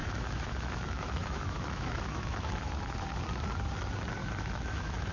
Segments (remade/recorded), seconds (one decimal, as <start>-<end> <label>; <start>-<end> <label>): 0.0-3.1 remade; 3.1-4.2 recorded; 4.2-5.1 remade